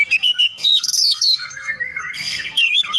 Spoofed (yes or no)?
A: yes